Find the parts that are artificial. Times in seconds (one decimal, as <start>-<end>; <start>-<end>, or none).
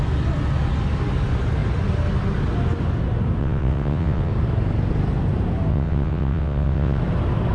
3.4-4.3; 5.7-7.0